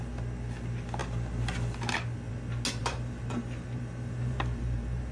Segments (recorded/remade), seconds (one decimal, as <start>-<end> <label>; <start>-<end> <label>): 0.0-2.8 recorded; 2.8-5.1 remade